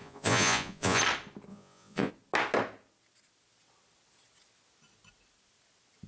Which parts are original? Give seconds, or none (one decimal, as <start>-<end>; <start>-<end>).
1.0-1.5; 2.1-6.1